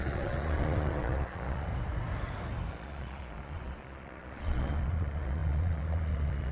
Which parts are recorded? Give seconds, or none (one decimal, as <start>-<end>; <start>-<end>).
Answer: 1.7-2.7